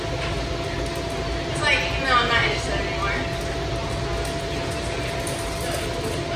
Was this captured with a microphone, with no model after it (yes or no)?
yes